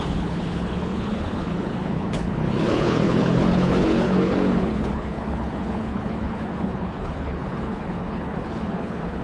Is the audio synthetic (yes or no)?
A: yes